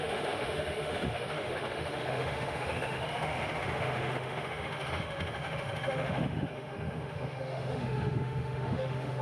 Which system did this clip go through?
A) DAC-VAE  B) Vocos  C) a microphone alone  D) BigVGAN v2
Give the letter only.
A